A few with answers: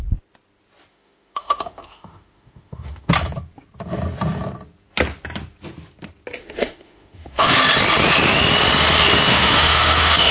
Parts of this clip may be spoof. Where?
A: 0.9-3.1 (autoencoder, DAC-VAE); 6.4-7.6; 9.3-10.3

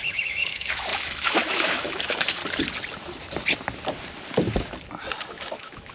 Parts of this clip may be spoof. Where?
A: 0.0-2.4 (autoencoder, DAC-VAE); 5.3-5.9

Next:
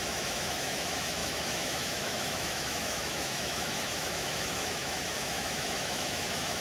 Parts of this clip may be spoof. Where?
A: 0.0-6.6 (autoencoder, DAC-VAE)

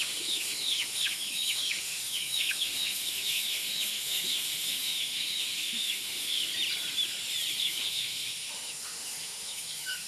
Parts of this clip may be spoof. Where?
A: 0.0-6.5 (autoencoder, DAC-VAE); 7.6-10.1